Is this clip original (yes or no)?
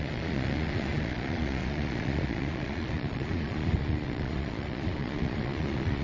no